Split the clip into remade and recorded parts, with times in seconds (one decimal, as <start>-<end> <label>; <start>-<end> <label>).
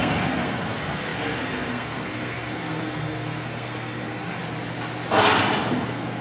0.0-4.4 remade; 4.4-5.8 recorded; 5.8-6.2 remade